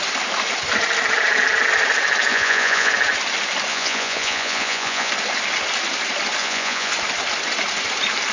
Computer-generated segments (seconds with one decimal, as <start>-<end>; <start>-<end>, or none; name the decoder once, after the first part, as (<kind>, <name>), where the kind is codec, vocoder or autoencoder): 2.3-2.9 (vocoder, Vocos); 3.7-5.1; 6.4-6.9